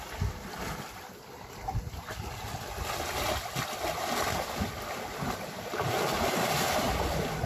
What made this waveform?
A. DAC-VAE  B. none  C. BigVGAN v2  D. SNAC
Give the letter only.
B